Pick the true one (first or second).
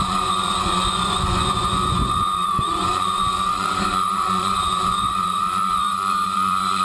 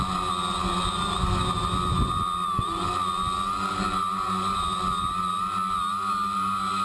second